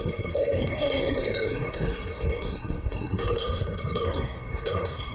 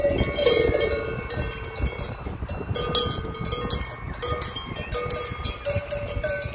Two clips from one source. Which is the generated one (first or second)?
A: first